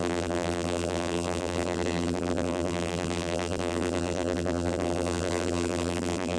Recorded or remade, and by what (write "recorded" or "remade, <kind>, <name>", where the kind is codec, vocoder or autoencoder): remade, vocoder, BigVGAN v2